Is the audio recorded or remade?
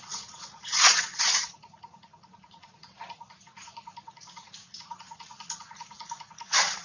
remade